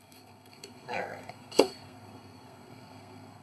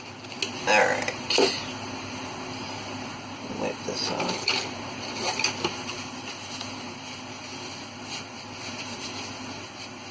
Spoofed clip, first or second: first